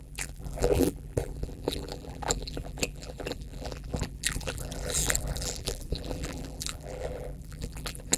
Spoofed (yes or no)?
yes